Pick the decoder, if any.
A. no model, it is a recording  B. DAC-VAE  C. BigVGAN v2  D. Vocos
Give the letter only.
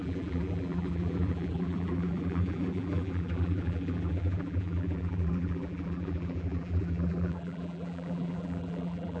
C